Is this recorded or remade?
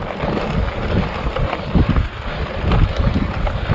recorded